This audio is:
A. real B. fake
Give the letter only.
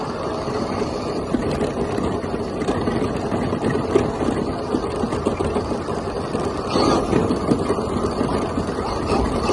A